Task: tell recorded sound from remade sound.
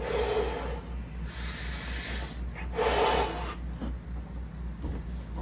recorded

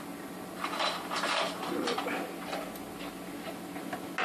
recorded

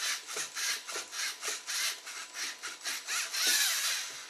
recorded